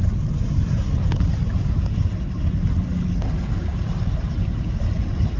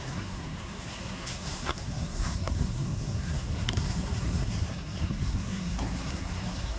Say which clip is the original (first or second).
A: first